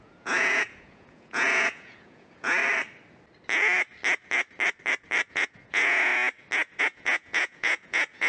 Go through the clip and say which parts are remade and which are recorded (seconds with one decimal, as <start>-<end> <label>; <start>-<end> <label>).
0.0-2.6 remade; 2.6-5.3 recorded; 5.3-6.1 remade; 6.1-6.8 recorded; 6.8-8.3 remade